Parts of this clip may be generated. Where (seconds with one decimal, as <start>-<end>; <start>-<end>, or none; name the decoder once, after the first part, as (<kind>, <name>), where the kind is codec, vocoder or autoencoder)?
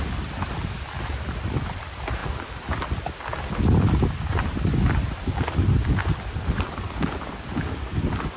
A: none